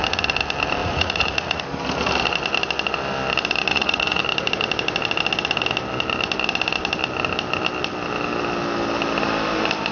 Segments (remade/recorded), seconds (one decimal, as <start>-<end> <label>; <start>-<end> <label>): 0.0-0.8 recorded; 0.8-1.6 remade; 1.6-3.7 recorded; 3.7-4.2 remade; 4.2-9.9 recorded